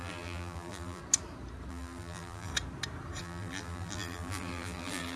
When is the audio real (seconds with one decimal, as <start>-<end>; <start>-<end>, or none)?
1.0-1.7; 2.5-3.2